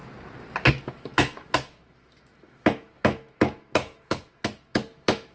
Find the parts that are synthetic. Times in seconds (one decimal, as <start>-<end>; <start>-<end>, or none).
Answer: 0.7-5.3